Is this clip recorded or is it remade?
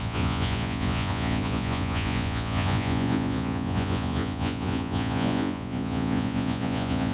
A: remade